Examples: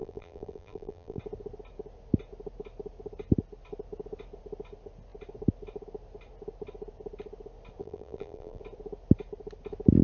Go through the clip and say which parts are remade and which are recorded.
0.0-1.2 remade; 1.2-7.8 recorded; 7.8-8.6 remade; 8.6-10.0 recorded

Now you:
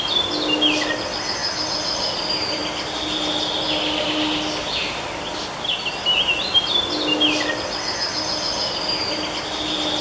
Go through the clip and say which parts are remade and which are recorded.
0.0-10.0 recorded

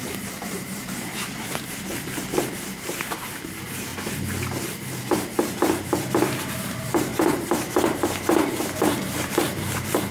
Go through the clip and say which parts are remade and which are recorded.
0.0-3.9 remade; 3.9-5.0 recorded; 5.0-10.1 remade

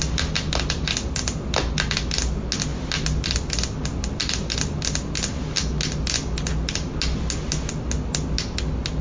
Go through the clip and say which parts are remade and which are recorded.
0.0-9.0 recorded